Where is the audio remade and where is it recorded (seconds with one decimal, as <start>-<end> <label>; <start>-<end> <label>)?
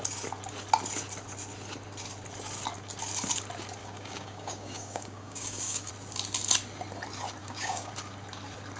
0.0-3.8 recorded; 3.8-5.9 remade; 5.9-7.4 recorded; 7.4-7.9 remade; 7.9-8.8 recorded